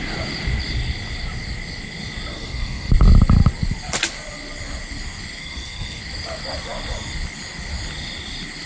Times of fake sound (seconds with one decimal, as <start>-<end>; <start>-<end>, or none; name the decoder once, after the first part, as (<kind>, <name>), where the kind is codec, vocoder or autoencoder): 2.3-2.9 (codec, SNAC); 5.4-6.0